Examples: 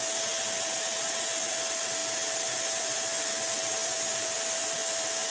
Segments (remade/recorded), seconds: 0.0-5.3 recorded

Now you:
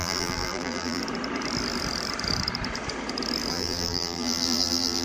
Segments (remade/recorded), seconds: 0.0-1.0 remade; 1.0-3.5 recorded; 3.5-5.0 remade

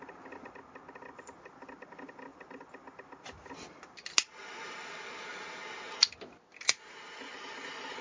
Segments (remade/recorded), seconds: 0.0-8.0 recorded

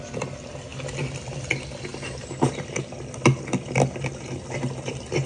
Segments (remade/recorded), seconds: 0.0-5.3 recorded

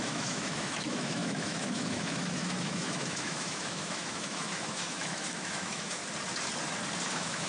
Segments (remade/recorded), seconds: 0.0-6.0 remade; 6.0-7.1 recorded; 7.1-7.5 remade

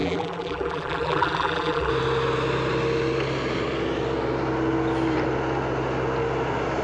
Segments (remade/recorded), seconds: 0.0-1.9 remade; 1.9-6.8 recorded

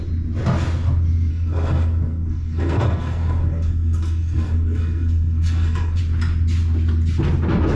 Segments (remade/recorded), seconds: 0.0-1.3 recorded; 1.3-6.0 remade; 6.0-7.8 recorded